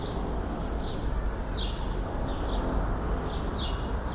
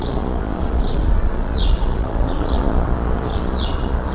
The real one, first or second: first